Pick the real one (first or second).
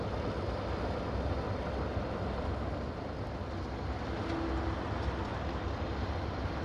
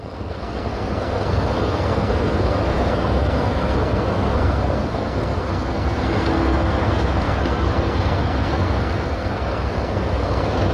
first